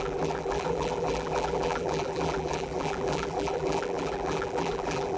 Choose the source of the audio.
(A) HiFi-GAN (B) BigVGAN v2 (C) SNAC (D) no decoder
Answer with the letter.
B